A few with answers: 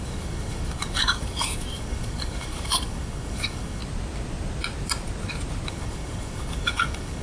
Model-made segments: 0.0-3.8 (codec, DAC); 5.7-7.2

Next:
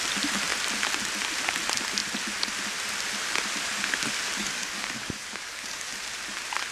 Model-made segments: 4.4-6.0 (codec, DAC)

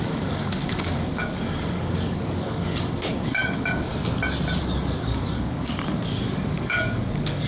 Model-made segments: 0.0-3.9 (codec, DAC); 4.6-7.5

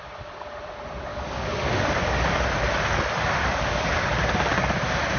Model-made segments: 1.1-2.4 (codec, DAC); 3.4-4.1

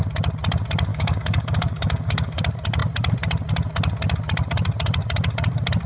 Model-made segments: 0.9-2.4 (codec, DAC)